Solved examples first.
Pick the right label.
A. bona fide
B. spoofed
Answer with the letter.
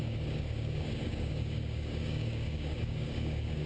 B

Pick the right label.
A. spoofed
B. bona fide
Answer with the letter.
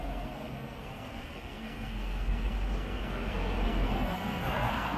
A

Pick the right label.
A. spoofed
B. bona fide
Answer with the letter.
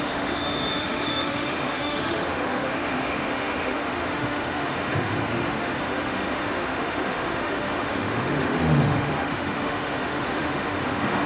A